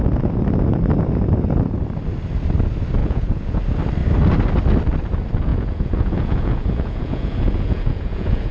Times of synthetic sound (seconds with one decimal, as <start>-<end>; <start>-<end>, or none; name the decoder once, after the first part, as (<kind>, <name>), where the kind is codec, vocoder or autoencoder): 3.0-3.6 (vocoder, Vocos); 5.5-8.5